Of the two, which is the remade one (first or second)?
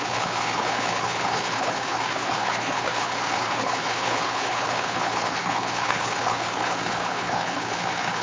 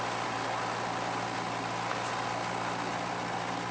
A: first